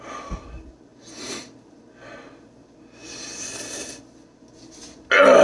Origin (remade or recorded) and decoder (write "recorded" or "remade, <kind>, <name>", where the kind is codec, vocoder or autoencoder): recorded